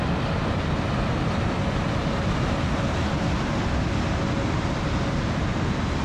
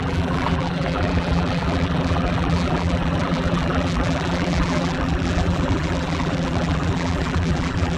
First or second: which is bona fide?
first